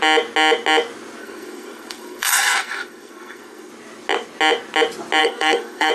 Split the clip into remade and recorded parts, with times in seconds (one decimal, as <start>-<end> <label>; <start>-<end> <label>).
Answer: 0.0-1.2 recorded; 1.2-3.7 remade; 3.7-5.2 recorded; 5.2-5.9 remade